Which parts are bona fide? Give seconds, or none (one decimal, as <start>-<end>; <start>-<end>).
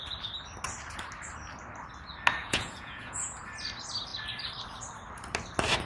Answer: 0.0-2.4; 3.4-5.9